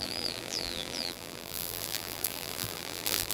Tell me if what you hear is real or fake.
fake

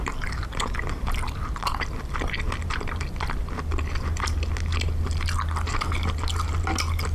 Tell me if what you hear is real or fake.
real